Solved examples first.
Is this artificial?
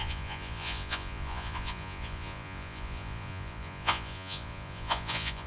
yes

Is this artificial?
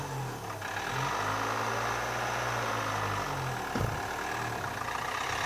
no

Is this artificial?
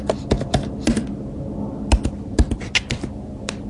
no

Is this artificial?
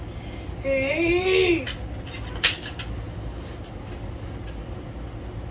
no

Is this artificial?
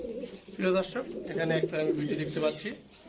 no